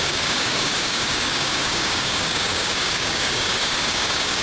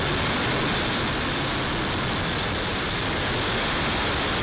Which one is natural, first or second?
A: second